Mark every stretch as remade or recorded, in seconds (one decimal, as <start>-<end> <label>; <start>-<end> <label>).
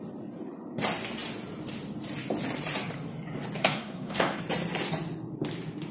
0.0-3.6 recorded; 3.6-4.4 remade; 4.4-5.9 recorded